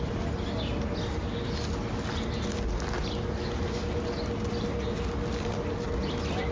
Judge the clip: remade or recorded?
recorded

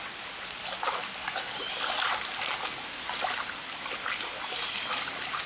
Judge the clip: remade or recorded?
recorded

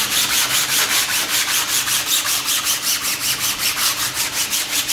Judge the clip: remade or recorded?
remade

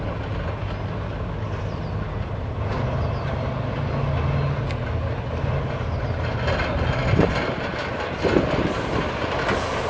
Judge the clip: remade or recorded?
recorded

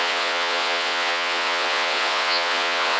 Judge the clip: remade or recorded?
remade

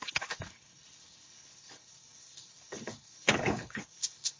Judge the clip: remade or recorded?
remade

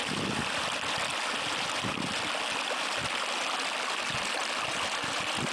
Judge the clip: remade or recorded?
recorded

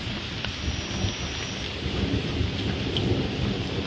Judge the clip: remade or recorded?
recorded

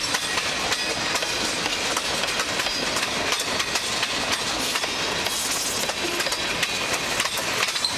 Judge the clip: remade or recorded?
recorded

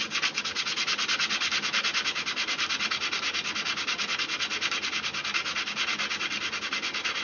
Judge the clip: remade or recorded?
recorded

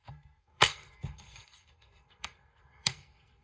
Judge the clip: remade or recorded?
remade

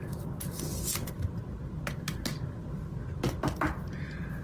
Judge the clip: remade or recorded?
recorded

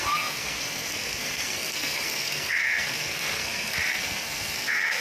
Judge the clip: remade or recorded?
remade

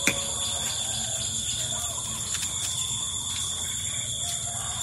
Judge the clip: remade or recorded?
recorded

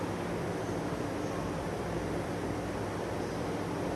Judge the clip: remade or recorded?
remade